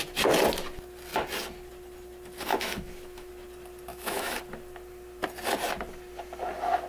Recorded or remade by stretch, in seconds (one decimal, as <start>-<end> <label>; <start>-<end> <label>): 0.0-2.5 recorded; 2.5-3.3 remade; 3.3-3.9 recorded; 3.9-4.4 remade; 4.4-6.9 recorded